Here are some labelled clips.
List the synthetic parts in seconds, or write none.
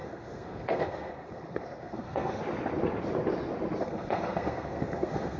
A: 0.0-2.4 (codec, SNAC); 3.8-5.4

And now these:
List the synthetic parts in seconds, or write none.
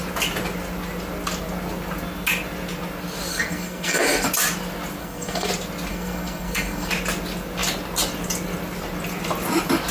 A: 3.3-4.3 (codec, SNAC); 5.0-5.5; 5.9-6.9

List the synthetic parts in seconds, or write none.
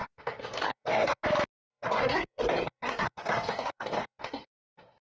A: 0.0-1.2 (codec, SNAC); 1.7-5.1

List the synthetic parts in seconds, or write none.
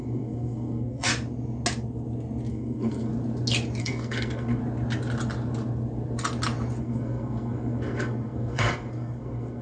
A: 0.0-1.1 (codec, SNAC); 2.5-3.1; 3.8-4.6; 6.8-9.6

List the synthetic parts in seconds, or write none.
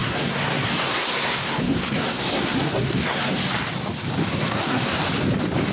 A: 0.0-3.4 (codec, SNAC); 4.3-5.0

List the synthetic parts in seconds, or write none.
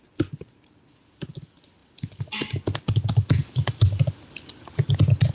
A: none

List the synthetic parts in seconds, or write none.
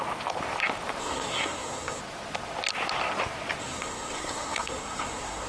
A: 1.0-2.0 (codec, SNAC); 3.6-5.5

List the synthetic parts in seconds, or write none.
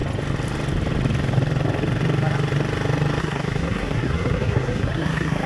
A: 3.2-5.5 (codec, SNAC)